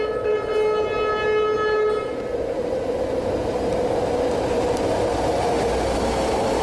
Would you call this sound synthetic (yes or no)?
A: no